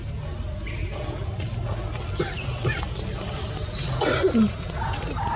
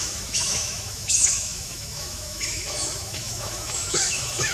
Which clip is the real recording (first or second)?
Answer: first